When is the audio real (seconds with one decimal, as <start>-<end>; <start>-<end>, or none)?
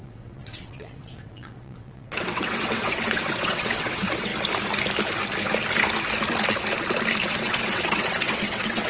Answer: 4.3-7.3